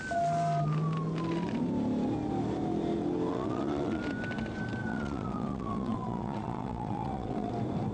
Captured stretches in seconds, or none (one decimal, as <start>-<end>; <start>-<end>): 0.0-3.3; 4.0-4.9; 7.5-7.9